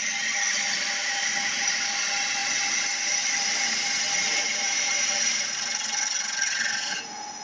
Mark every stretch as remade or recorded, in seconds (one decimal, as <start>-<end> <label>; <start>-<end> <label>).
0.0-4.2 recorded; 4.2-5.6 remade; 5.6-7.4 recorded